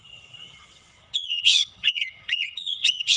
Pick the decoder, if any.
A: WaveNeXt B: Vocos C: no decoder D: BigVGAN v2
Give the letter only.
A